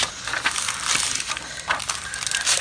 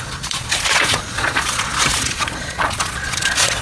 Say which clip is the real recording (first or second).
first